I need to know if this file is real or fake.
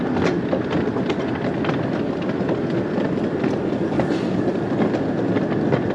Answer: real